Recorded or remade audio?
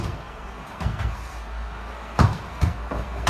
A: remade